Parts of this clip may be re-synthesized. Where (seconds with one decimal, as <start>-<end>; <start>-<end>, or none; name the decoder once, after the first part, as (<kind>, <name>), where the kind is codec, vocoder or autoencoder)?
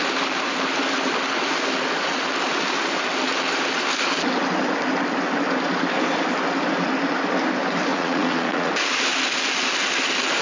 7.9-8.7 (vocoder, Vocos)